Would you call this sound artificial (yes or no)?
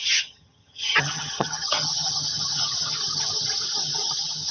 yes